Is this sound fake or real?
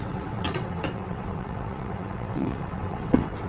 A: fake